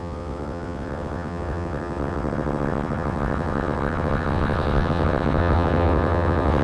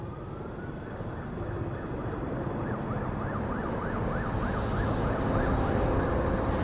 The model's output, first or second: first